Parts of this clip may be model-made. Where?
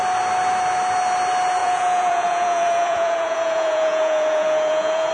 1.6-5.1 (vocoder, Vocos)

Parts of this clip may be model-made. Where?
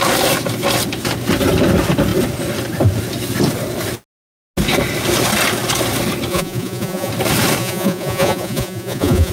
6.3-7.1 (vocoder, Vocos); 7.6-9.3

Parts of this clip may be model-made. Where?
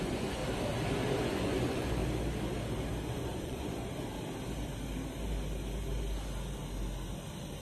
0.0-0.4 (vocoder, Vocos); 1.2-2.0; 3.1-4.0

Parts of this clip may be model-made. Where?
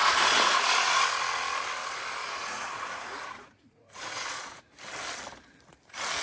0.0-1.0 (vocoder, Vocos); 2.2-4.6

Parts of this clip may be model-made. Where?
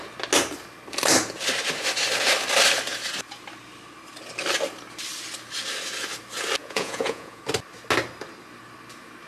6.6-7.4 (vocoder, Vocos)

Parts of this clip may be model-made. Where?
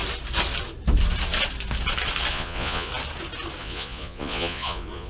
2.3-2.9 (vocoder, Vocos); 3.6-5.1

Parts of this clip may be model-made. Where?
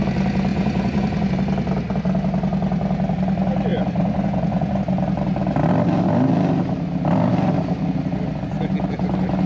0.5-1.3 (vocoder, Vocos); 3.7-4.8